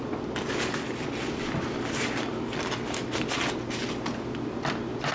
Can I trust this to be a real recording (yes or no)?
yes